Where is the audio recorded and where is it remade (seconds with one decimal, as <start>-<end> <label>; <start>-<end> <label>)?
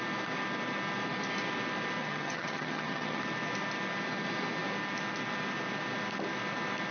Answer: 0.0-2.0 recorded; 2.0-3.2 remade; 3.2-6.9 recorded